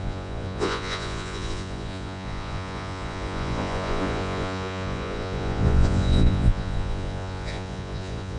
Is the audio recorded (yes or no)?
no